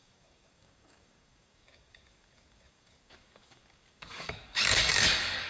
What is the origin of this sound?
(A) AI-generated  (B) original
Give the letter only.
A